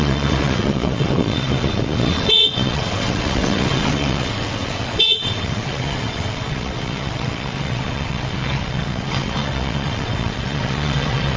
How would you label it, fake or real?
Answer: fake